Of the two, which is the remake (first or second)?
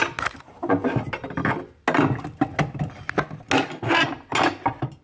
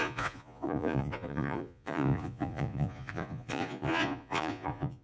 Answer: second